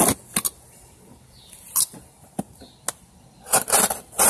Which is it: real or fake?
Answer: real